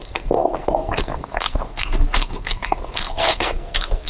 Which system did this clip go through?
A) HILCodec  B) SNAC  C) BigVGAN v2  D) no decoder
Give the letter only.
B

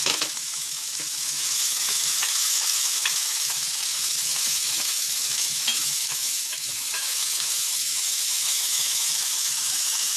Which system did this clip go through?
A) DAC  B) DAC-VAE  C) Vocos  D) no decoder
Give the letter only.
B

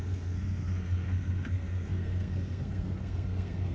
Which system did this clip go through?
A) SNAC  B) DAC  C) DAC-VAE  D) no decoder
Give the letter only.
A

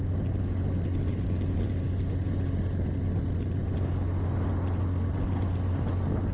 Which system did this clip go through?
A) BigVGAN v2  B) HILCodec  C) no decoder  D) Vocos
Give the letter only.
C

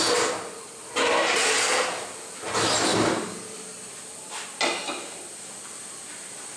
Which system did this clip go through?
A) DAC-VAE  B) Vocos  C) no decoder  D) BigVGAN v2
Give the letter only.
C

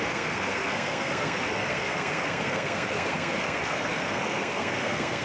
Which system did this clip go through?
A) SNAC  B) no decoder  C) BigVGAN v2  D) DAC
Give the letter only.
A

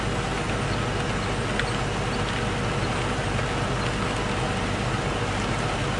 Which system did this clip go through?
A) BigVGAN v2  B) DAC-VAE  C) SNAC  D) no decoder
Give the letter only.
D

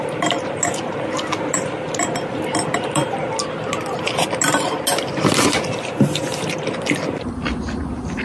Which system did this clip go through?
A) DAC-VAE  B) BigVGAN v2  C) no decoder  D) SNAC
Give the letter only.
C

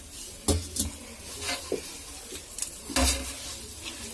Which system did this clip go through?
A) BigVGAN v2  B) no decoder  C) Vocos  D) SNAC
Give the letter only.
B